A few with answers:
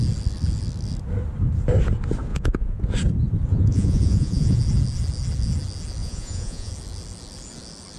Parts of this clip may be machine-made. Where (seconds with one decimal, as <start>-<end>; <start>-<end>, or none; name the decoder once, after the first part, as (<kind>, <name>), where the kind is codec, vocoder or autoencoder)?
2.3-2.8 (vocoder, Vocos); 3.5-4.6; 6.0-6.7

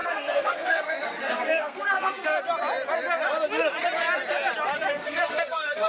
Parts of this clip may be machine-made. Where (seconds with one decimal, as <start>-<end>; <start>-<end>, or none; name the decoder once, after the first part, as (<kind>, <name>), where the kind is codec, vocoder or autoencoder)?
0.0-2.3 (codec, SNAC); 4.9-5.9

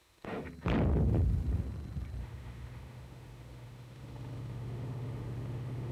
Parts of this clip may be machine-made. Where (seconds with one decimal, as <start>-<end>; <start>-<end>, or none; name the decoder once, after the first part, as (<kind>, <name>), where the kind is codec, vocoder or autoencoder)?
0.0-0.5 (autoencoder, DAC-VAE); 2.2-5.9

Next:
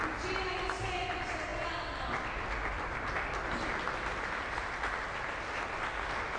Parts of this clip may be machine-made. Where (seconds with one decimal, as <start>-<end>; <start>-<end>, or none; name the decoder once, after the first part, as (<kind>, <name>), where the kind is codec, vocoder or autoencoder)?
none

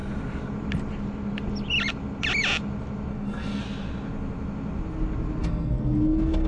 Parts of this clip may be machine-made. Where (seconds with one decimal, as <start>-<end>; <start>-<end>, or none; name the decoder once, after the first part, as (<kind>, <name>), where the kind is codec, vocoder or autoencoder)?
3.1-3.6 (codec, SNAC); 5.4-6.5

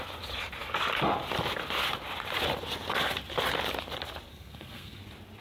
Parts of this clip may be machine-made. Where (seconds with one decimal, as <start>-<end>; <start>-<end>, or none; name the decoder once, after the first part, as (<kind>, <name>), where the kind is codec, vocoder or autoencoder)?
4.3-5.0 (codec, SNAC)

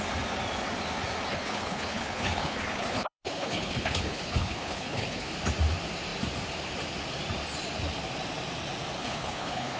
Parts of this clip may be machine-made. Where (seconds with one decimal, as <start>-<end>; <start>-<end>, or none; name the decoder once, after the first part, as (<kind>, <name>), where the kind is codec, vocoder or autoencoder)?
1.3-5.3 (codec, HILCodec); 9.0-9.8